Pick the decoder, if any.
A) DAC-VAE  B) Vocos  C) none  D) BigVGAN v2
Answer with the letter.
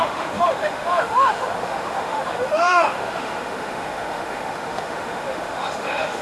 A